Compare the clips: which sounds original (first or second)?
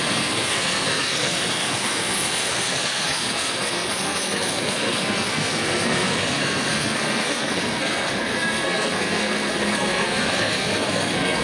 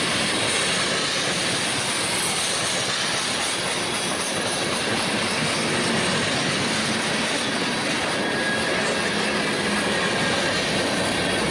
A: second